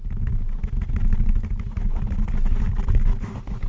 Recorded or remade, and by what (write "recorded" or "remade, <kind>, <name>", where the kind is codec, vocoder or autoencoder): recorded